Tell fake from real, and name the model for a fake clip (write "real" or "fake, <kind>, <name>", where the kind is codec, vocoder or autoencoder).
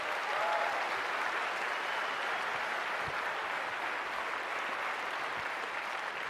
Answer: real